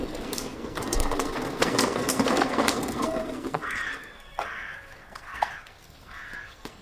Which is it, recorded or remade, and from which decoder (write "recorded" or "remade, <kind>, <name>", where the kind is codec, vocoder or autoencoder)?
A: remade, codec, SNAC